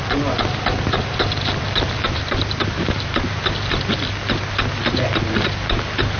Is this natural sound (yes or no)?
yes